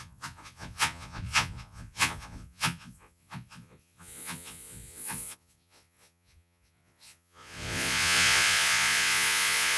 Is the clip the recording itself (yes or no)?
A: no